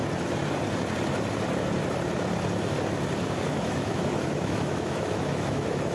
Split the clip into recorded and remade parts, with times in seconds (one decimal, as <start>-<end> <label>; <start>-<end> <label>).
0.0-3.5 recorded; 3.5-5.9 remade